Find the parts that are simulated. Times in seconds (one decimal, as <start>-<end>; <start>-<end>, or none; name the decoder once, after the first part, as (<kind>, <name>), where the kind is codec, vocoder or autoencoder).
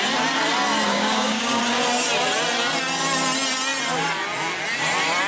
0.9-1.6 (codec, DAC)